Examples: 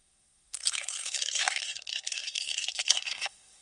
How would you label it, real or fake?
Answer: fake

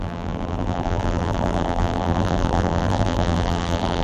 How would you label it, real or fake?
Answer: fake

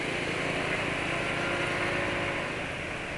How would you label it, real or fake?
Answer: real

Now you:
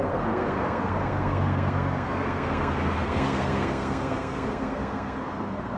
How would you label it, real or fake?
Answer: fake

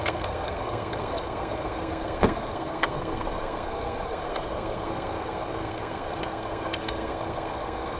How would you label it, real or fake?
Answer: fake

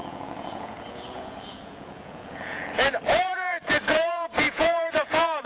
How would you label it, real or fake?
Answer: fake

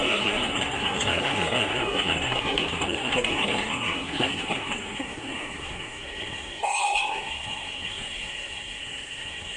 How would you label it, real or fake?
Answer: fake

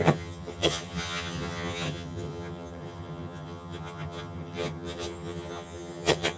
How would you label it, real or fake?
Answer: fake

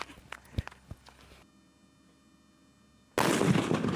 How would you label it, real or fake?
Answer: real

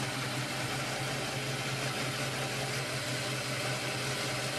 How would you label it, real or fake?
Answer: real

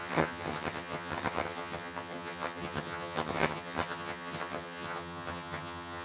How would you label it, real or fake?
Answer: fake